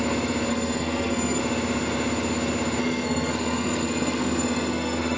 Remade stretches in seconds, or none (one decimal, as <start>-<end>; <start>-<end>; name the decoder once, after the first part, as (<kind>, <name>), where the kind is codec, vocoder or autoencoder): 0.5-1.4 (codec, SNAC); 2.8-5.2